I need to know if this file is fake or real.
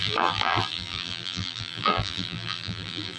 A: fake